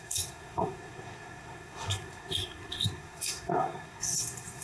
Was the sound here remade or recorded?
remade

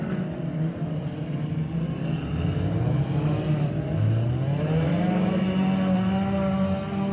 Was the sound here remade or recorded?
recorded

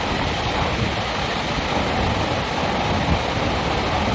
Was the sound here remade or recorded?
recorded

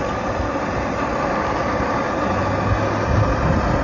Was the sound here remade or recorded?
recorded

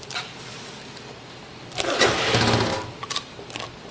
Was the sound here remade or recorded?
recorded